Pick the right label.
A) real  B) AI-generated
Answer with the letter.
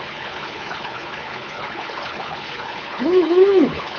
B